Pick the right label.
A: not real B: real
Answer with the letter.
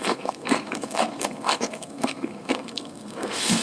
A